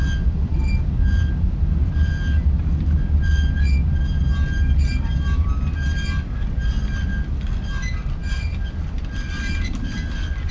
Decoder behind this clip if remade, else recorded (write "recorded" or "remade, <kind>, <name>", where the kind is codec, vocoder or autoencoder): recorded